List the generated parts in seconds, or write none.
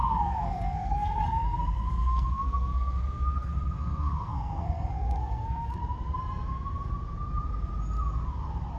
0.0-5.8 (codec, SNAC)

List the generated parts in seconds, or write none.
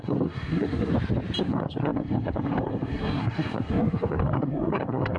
0.0-0.9 (codec, SNAC); 1.4-5.2